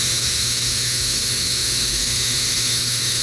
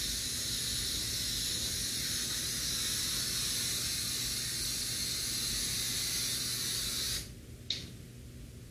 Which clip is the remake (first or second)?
first